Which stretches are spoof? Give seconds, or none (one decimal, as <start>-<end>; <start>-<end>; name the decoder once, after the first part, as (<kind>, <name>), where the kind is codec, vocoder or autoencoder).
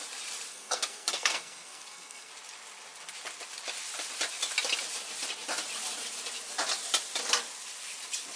0.5-2.3 (codec, SNAC)